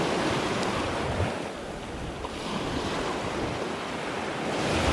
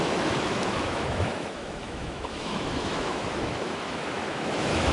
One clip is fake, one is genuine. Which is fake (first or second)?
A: second